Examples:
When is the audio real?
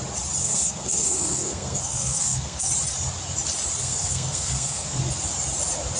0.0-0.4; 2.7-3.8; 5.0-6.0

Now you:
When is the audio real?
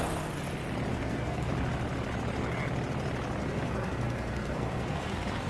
0.0-0.9; 1.5-3.4